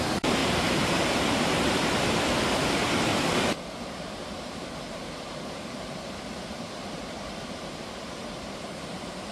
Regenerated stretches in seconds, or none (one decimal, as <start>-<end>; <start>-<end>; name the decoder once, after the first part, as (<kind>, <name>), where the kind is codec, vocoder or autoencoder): 0.0-3.1 (vocoder, BigVGAN v2); 3.8-9.3